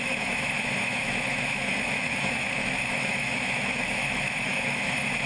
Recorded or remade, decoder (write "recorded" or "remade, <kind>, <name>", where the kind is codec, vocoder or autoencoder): remade, autoencoder, DAC-VAE